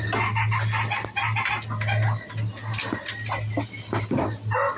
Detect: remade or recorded recorded